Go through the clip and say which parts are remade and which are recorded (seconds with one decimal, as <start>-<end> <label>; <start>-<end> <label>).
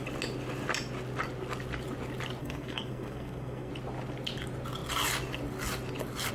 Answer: 0.0-2.4 recorded; 2.4-3.7 remade; 3.7-6.3 recorded